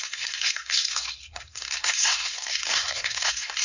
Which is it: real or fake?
fake